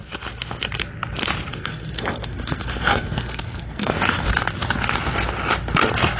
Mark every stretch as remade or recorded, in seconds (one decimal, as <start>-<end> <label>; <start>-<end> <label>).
0.0-1.5 recorded; 1.5-3.9 remade; 3.9-6.2 recorded